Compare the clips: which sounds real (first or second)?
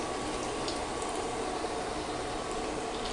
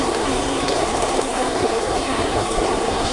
first